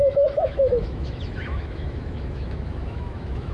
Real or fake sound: fake